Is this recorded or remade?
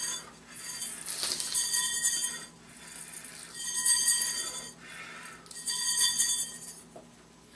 recorded